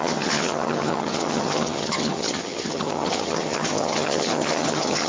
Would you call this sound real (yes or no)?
no